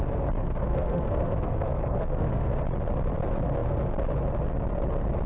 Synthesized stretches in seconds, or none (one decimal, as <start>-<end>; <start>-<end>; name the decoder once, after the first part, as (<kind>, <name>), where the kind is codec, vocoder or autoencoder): 0.4-2.6 (codec, SNAC)